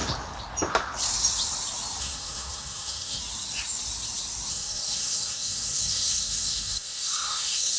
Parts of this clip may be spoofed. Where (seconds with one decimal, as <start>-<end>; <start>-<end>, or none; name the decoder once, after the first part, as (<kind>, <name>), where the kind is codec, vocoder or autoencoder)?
2.0-3.2 (codec, SNAC); 4.5-7.8